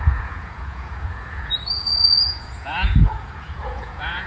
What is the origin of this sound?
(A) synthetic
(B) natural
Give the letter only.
A